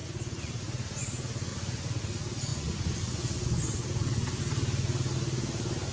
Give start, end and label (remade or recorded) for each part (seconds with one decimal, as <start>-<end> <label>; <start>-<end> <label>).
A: 0.0-0.6 remade; 0.6-1.5 recorded; 1.5-2.0 remade; 2.0-2.5 recorded; 2.5-4.4 remade; 4.4-5.9 recorded